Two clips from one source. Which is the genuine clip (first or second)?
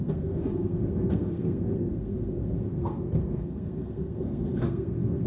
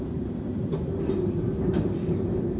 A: second